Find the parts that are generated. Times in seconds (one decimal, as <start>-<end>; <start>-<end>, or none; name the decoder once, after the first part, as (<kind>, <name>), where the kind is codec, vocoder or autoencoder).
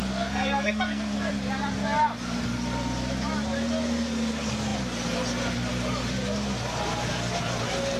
0.0-1.3 (codec, SNAC)